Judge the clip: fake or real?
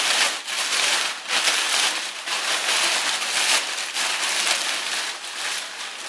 real